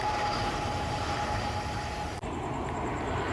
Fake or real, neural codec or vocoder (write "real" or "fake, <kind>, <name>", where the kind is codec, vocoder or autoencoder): fake, vocoder, BigVGAN v2